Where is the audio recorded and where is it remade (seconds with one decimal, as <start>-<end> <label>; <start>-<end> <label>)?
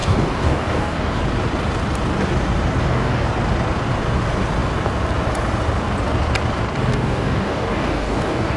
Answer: 0.0-1.2 remade; 1.2-2.8 recorded; 2.8-3.3 remade; 3.3-6.9 recorded; 6.9-8.6 remade